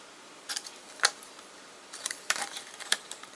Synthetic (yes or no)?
yes